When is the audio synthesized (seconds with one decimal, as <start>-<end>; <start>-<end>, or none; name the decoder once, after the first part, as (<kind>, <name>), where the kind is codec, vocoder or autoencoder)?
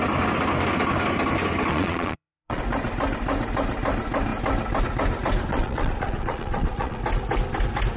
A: 1.7-2.6 (vocoder, Vocos); 5.5-7.0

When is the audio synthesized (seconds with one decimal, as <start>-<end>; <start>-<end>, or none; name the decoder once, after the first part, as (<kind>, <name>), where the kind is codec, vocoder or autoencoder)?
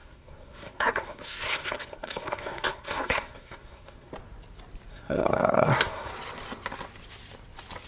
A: 0.0-4.1 (codec, SNAC); 4.9-6.1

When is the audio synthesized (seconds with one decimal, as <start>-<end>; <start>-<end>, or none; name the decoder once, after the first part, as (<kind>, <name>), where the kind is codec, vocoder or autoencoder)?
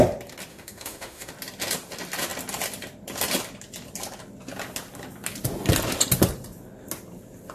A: 0.5-1.3 (autoencoder, DAC-VAE)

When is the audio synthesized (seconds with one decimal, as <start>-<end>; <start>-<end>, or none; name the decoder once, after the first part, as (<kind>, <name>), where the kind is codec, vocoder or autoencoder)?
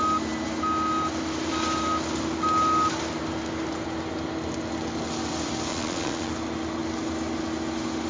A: 5.7-6.3 (vocoder, Vocos)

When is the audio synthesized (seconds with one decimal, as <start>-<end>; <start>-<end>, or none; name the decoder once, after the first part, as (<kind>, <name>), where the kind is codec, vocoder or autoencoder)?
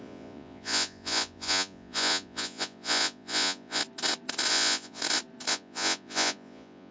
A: 0.0-3.8 (vocoder, Vocos); 4.5-5.0; 5.5-6.9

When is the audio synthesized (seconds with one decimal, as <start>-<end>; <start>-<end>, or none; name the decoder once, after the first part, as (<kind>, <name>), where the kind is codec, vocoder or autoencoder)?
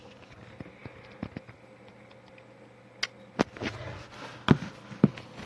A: none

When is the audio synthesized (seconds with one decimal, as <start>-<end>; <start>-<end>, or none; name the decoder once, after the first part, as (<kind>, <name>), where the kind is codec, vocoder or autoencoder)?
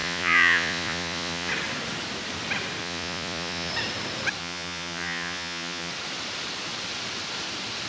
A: 0.0-1.5 (vocoder, Vocos); 2.8-3.7; 4.4-5.9